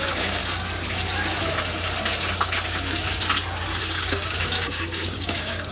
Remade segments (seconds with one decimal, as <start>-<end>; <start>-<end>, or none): 0.0-0.4; 3.8-5.7